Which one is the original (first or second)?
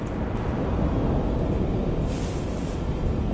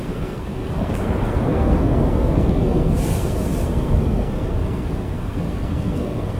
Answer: first